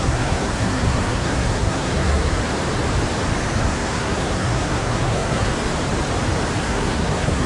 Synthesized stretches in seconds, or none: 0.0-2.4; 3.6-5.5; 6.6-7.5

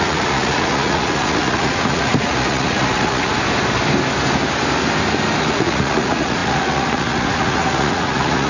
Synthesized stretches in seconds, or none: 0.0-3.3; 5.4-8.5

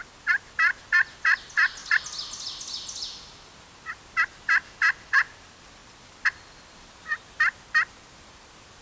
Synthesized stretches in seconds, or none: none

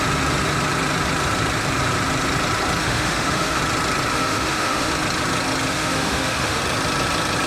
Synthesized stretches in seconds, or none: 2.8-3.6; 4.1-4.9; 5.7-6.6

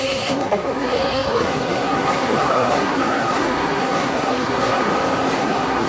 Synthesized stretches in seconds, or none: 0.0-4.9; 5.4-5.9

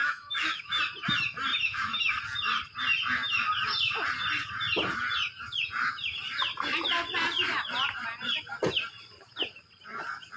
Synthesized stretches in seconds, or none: 0.0-0.8; 1.5-2.2

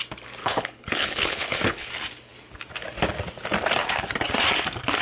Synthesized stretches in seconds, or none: 0.4-1.9

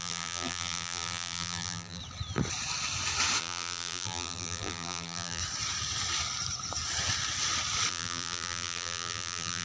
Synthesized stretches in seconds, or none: 0.0-2.0; 3.4-5.4; 7.9-9.6